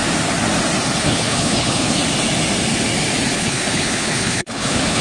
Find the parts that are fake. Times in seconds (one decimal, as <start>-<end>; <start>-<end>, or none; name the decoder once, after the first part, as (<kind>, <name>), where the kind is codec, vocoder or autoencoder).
1.0-2.0 (codec, HILCodec); 3.3-5.0